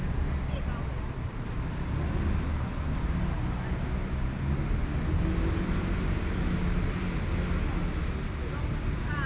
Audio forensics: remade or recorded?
recorded